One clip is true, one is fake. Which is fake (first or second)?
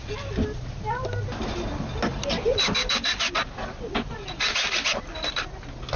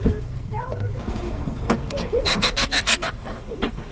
second